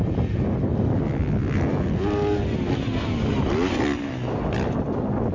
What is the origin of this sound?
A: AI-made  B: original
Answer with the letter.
B